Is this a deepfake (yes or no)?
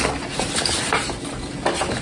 no